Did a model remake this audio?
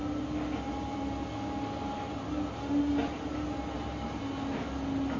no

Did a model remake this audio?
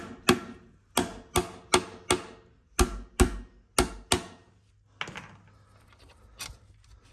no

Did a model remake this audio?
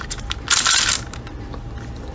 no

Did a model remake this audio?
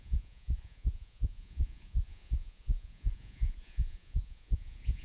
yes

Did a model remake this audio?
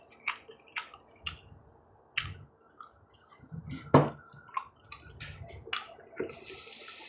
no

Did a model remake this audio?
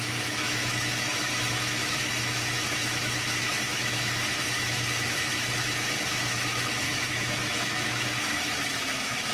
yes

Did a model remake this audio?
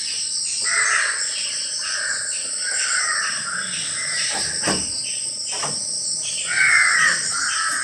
no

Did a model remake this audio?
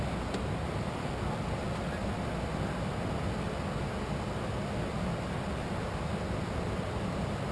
no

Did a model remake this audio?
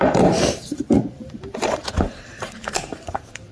yes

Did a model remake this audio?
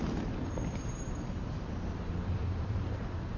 yes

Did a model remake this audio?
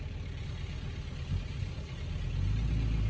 no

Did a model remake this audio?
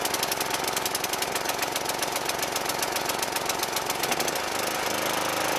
no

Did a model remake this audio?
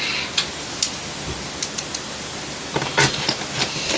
no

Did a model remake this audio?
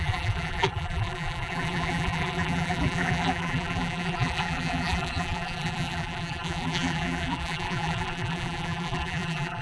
yes